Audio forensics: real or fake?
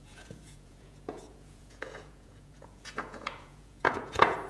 fake